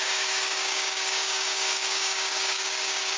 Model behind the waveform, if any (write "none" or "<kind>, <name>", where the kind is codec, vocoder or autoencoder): codec, DAC